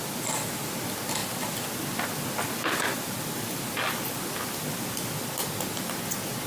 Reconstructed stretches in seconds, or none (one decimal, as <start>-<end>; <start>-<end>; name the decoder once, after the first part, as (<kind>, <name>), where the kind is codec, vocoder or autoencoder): none